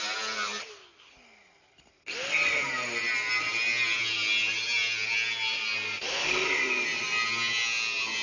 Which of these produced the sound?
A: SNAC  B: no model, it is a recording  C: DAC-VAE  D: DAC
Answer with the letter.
B